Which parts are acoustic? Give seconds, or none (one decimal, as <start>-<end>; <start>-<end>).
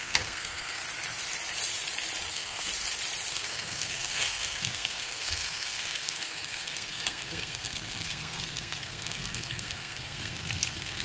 0.8-2.3; 2.7-3.3